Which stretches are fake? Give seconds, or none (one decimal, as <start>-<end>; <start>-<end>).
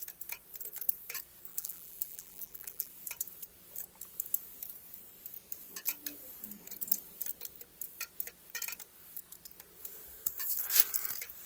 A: 1.5-2.9